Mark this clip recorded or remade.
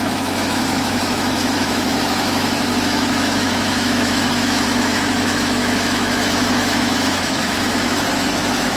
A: remade